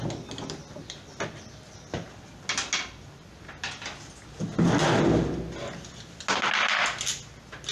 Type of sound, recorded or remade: recorded